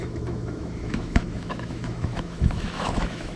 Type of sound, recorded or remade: remade